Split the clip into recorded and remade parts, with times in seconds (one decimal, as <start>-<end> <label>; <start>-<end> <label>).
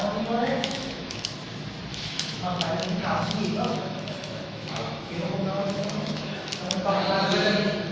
0.0-0.4 recorded; 0.4-1.3 remade; 1.3-1.9 recorded; 1.9-6.6 remade; 6.6-7.9 recorded